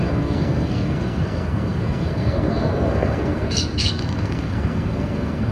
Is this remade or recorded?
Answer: remade